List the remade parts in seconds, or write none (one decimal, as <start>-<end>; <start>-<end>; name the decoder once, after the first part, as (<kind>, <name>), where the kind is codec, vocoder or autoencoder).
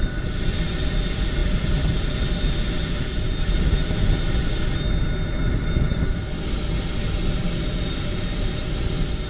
none